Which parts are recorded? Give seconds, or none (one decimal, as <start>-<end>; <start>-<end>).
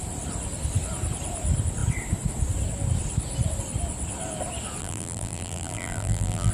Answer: 0.0-4.8